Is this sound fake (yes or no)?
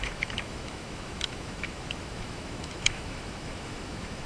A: yes